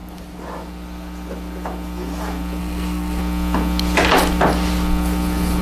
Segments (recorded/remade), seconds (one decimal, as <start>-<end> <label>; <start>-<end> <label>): 0.0-2.6 recorded; 2.6-3.2 remade; 3.2-5.6 recorded